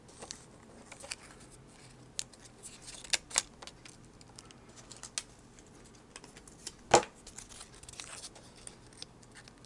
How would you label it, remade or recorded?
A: recorded